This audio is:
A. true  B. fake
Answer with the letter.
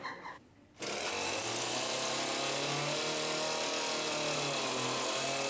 A